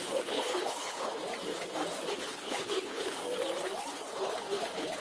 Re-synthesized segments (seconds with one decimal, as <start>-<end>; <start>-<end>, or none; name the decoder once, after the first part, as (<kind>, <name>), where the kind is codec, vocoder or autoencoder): 0.0-1.2 (codec, HILCodec); 2.1-3.2; 3.9-5.0